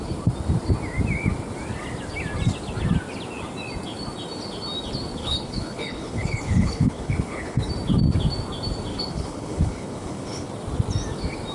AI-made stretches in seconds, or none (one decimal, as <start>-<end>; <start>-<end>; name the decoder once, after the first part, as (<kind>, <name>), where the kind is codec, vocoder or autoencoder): 5.2-7.7 (codec, HILCodec); 8.9-10.5